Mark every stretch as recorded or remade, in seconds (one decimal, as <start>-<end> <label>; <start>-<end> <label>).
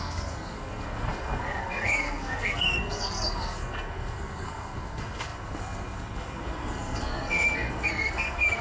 0.0-8.6 remade